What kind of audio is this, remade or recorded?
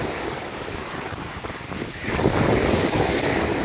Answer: remade